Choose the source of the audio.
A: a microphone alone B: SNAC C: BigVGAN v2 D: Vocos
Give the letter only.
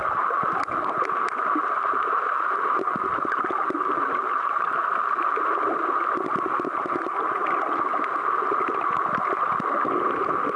A